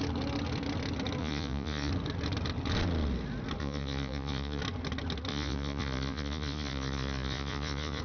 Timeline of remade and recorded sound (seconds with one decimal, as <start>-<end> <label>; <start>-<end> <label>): 0.0-1.2 recorded; 1.2-1.9 remade; 1.9-3.6 recorded; 3.6-4.6 remade; 4.6-5.3 recorded; 5.3-8.0 remade

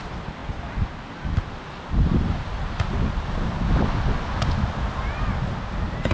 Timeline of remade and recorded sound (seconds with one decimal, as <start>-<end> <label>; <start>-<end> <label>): 0.0-6.1 recorded

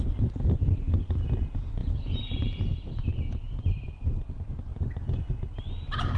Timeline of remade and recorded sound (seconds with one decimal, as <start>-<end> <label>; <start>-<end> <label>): 0.0-1.8 recorded; 1.8-3.6 remade; 3.6-6.2 recorded

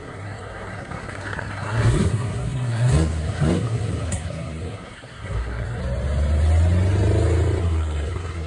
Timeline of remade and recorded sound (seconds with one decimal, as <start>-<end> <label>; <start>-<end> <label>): 0.0-5.8 remade; 5.8-7.6 recorded; 7.6-8.5 remade

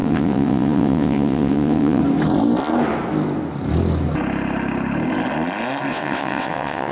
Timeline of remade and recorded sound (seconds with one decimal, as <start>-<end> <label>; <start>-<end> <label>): 0.0-2.0 remade; 2.0-5.9 recorded; 5.9-6.9 remade

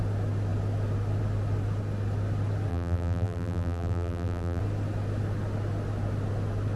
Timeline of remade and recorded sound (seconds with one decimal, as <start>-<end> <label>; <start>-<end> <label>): 0.0-2.7 recorded; 2.7-4.6 remade; 4.6-6.8 recorded